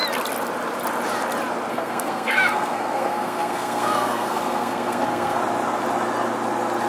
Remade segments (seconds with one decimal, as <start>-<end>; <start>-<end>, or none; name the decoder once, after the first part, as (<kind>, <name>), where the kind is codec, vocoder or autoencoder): 1.7-5.4 (codec, SNAC)